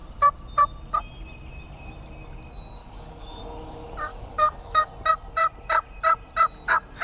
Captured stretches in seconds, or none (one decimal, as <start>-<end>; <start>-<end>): 0.0-2.8; 3.4-4.1; 4.9-7.0